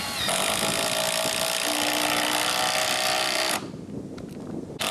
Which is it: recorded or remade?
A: recorded